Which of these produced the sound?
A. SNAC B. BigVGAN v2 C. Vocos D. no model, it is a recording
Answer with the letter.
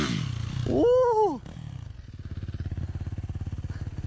D